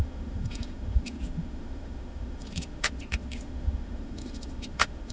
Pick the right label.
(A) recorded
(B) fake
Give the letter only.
B